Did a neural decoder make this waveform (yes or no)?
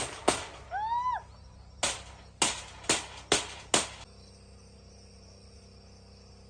no